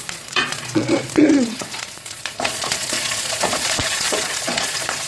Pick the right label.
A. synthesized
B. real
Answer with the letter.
A